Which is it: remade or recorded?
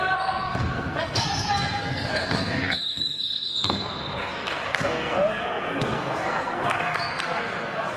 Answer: remade